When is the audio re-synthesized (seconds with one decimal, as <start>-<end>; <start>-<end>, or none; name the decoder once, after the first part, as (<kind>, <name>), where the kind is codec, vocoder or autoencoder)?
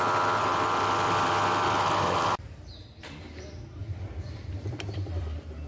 3.8-5.7 (vocoder, BigVGAN v2)